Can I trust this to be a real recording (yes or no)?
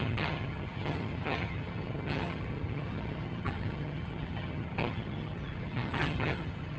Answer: no